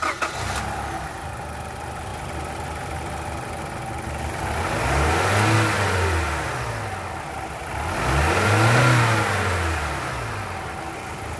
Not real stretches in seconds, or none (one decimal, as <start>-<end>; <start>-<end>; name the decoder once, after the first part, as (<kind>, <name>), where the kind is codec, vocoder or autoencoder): none